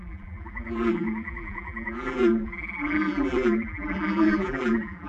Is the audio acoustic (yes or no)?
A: no